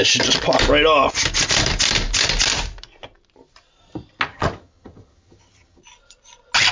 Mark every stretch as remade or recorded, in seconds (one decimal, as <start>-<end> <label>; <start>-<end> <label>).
0.0-4.3 recorded; 4.3-5.8 remade; 5.8-6.7 recorded